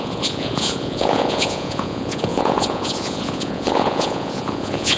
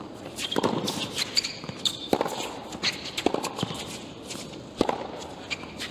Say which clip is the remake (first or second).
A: first